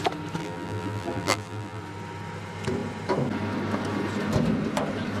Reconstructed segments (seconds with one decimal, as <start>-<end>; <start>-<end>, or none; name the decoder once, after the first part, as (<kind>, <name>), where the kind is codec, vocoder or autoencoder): 0.4-1.8 (vocoder, BigVGAN v2)